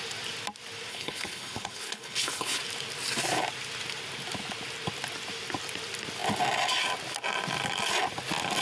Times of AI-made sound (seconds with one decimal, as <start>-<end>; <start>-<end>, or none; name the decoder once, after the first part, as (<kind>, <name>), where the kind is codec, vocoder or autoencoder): 0.9-2.6 (codec, HILCodec)